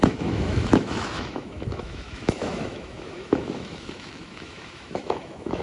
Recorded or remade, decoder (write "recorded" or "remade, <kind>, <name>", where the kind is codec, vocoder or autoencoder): remade, autoencoder, DAC-VAE